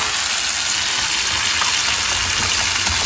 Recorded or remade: recorded